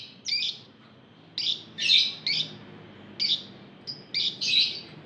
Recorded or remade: recorded